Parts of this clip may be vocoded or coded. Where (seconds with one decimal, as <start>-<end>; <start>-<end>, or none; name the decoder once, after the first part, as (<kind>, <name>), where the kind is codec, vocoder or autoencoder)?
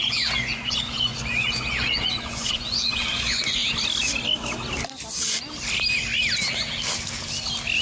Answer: 0.0-3.6 (vocoder, Vocos)